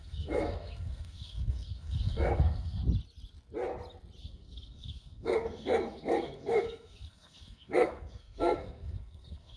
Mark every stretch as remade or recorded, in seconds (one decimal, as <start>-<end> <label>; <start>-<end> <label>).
0.0-2.8 remade; 2.8-4.2 recorded; 4.2-9.6 remade